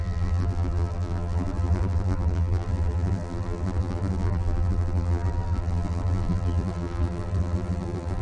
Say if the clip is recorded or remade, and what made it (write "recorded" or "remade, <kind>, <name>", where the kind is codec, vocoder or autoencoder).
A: remade, vocoder, BigVGAN v2